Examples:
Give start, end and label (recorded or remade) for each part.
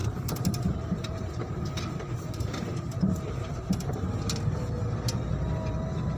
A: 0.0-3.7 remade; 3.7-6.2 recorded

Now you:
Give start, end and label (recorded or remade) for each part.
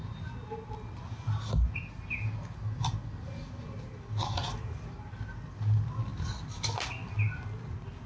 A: 0.0-8.1 recorded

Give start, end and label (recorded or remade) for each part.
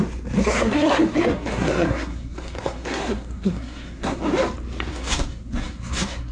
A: 0.0-0.4 recorded; 0.4-4.2 remade; 4.2-4.9 recorded; 4.9-6.3 remade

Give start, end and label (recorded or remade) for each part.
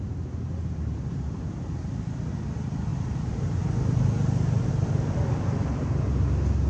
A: 0.0-2.9 recorded; 2.9-4.7 remade; 4.7-6.7 recorded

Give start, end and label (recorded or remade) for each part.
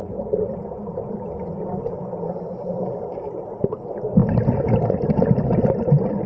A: 0.0-3.0 recorded; 3.0-6.3 remade